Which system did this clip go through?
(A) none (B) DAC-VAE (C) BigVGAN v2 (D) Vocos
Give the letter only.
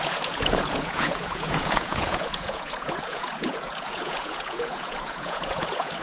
D